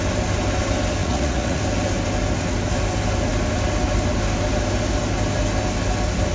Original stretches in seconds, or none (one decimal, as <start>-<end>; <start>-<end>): 0.0-1.0; 1.6-6.3